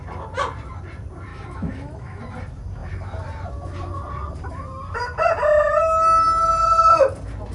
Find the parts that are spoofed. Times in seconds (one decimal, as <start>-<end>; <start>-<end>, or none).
1.3-2.2